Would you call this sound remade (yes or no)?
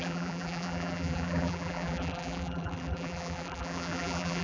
yes